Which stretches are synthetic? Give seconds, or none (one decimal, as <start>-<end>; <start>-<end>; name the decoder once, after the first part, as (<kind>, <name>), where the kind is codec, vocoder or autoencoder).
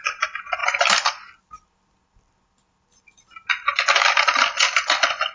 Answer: none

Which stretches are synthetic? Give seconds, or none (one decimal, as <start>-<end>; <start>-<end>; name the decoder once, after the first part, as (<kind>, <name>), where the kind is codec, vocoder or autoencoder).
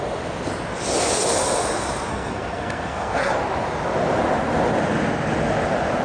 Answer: 2.1-3.3 (codec, SNAC)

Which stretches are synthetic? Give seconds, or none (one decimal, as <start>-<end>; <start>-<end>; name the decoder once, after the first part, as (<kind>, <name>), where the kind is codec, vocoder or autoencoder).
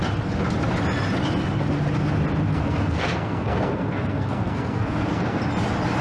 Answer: 2.5-5.4 (codec, SNAC)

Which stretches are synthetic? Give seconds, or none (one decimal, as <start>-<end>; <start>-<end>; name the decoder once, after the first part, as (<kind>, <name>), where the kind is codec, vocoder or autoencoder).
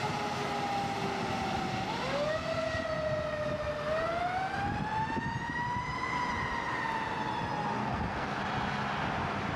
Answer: 7.8-8.4 (codec, SNAC)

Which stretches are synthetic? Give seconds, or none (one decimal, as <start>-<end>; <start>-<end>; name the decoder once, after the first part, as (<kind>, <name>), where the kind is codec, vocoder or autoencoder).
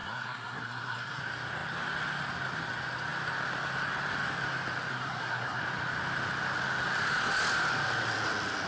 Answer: 0.0-1.2 (codec, SNAC); 4.9-5.6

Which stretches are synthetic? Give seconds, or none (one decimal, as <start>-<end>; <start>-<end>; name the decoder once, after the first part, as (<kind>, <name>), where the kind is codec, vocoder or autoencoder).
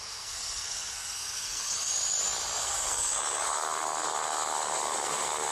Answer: 0.0-1.9 (codec, SNAC); 2.6-5.5